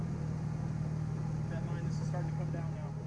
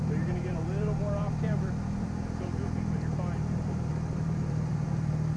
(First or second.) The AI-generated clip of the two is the second